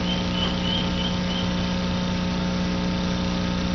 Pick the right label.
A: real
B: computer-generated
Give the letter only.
A